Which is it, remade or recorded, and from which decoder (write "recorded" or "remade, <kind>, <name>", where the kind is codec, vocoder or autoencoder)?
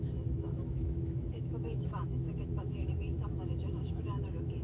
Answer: remade, autoencoder, DAC-VAE